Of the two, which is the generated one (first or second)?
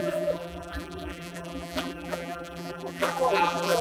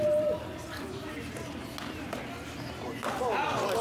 first